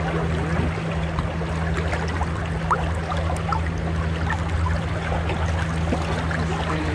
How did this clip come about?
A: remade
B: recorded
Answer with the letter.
B